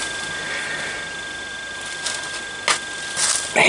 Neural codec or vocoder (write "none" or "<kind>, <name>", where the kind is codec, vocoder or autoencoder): none